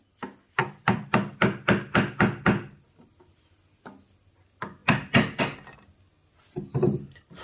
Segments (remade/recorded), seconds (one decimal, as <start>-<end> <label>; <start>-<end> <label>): 0.0-0.6 recorded; 0.6-3.2 remade; 3.2-7.4 recorded